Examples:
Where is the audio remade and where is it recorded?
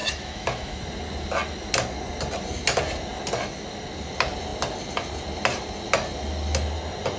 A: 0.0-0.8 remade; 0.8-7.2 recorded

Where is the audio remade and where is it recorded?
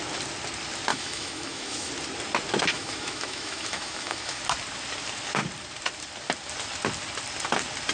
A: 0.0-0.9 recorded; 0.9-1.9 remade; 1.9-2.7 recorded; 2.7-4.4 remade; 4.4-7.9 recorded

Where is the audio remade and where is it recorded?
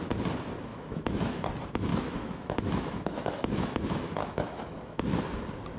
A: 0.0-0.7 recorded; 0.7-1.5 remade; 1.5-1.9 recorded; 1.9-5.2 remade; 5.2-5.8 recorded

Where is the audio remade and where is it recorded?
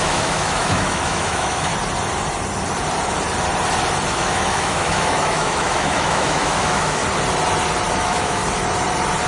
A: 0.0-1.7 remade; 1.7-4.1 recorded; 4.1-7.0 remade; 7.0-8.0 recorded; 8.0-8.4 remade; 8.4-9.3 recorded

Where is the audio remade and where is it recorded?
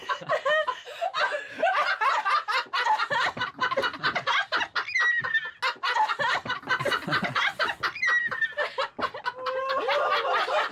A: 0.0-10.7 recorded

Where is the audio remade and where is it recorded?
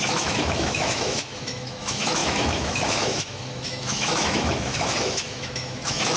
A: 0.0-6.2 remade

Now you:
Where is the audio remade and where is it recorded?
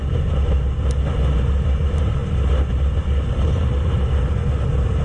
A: 0.0-5.0 recorded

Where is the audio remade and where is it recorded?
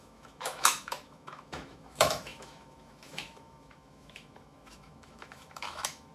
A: 0.0-6.1 remade